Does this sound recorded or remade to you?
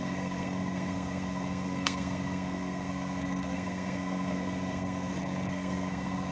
remade